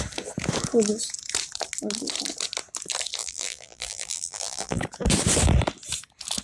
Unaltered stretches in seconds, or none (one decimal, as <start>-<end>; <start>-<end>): 0.0-3.2; 4.8-6.4